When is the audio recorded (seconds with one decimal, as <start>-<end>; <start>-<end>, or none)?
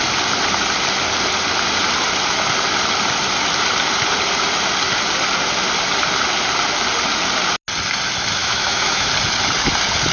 0.0-8.4; 9.1-10.1